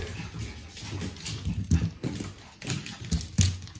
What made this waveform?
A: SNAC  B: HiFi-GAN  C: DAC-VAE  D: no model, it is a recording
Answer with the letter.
D